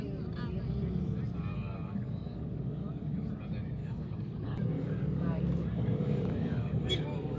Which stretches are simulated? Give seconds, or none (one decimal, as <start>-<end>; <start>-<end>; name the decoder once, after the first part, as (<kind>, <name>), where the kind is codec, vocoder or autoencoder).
1.5-3.3 (codec, DAC); 3.8-7.4